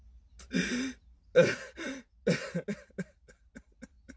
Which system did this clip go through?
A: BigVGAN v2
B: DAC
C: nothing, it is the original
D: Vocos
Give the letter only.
C